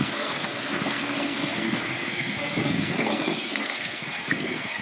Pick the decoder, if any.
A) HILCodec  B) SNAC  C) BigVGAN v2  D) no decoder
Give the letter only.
B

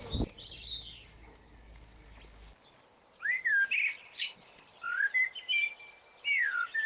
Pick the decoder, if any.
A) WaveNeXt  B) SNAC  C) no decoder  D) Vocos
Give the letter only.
C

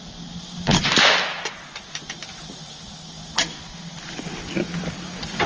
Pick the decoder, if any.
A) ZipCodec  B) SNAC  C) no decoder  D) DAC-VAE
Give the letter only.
C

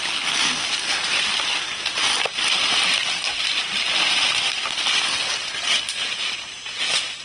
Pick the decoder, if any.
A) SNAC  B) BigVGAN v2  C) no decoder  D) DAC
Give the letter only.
C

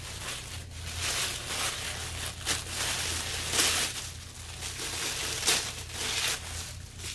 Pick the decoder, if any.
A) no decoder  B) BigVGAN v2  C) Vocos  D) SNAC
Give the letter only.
A